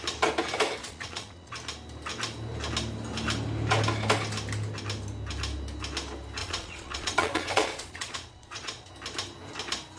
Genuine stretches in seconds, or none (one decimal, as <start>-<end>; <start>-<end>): 0.0-0.8; 1.5-6.4; 8.9-10.0